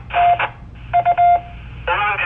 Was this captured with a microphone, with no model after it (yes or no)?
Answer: yes